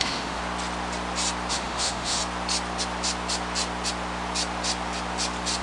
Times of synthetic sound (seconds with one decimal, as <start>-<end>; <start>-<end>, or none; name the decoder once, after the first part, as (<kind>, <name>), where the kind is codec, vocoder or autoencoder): 0.0-0.4 (autoencoder, DAC-VAE); 1.5-2.2